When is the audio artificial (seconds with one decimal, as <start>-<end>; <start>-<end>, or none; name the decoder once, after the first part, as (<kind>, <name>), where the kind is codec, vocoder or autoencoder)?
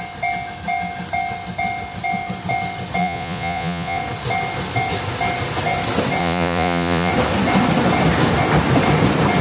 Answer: 3.0-4.0 (vocoder, Vocos); 6.2-7.1